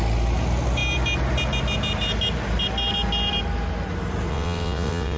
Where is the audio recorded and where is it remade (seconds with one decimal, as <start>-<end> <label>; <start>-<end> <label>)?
0.0-4.3 recorded; 4.3-5.2 remade